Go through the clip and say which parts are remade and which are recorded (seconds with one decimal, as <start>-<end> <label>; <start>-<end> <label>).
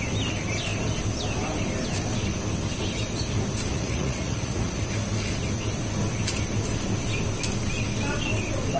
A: 0.0-3.7 recorded; 3.7-4.8 remade; 4.8-8.8 recorded